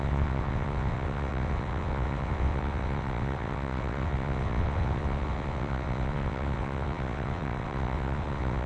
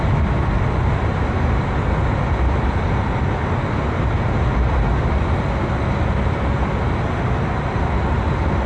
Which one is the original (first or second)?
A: second